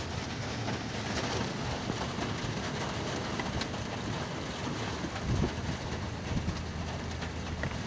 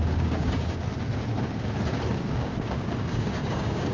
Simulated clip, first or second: second